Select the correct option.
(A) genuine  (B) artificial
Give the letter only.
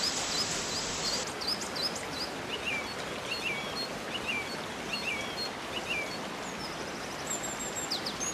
A